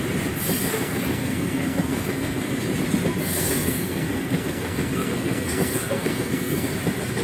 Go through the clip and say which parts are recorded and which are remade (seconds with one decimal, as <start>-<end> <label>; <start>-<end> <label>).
0.0-0.6 recorded; 0.6-2.5 remade; 2.5-3.2 recorded; 3.2-6.7 remade; 6.7-7.2 recorded